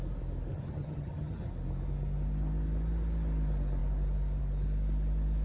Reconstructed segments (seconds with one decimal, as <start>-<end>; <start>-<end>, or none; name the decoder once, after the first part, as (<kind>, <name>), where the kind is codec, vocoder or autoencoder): 0.5-1.5 (vocoder, HiFi-GAN)